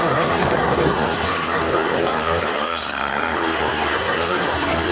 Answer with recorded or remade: remade